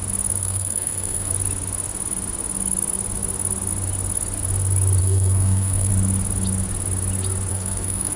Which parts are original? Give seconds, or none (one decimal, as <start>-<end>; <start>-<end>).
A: 0.0-0.4; 1.3-5.0; 5.9-7.5